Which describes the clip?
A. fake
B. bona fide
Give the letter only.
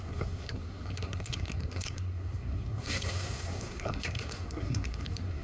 A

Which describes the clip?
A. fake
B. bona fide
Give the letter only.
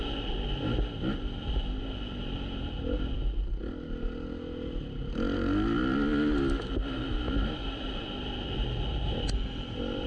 B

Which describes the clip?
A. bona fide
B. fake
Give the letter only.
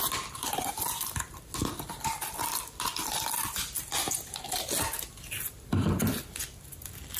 A